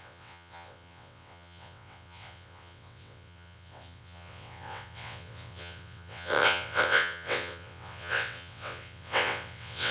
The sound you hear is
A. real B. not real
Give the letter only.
B